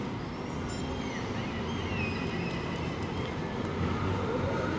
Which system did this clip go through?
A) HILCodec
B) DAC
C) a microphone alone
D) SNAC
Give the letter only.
C